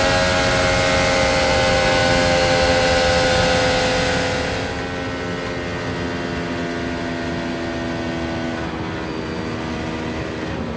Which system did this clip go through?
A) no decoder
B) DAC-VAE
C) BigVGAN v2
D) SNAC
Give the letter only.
A